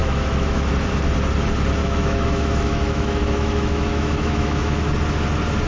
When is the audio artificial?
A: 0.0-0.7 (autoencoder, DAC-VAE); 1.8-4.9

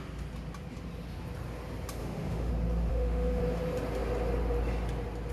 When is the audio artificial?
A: 2.0-2.5 (autoencoder, DAC-VAE); 2.9-3.4